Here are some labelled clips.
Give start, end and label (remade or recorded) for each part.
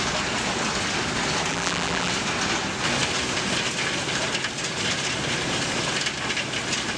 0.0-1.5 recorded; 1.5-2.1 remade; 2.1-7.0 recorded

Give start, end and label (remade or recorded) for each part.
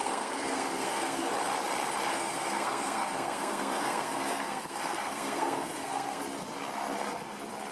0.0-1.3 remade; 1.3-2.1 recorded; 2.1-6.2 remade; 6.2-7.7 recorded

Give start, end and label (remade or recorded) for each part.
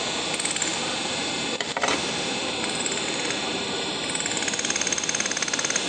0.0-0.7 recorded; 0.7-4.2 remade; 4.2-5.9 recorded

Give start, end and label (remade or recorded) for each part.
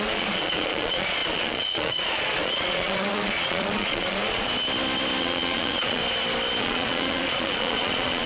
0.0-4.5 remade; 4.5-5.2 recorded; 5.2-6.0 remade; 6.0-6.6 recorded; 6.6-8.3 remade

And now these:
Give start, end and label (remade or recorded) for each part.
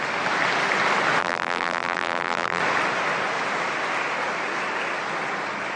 0.0-1.2 recorded; 1.2-2.6 remade; 2.6-5.8 recorded